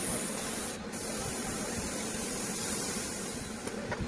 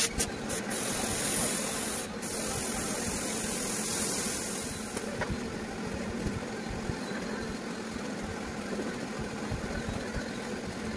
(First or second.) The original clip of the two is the second